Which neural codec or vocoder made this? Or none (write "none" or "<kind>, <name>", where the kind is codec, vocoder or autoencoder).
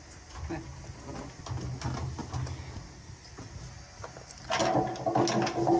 none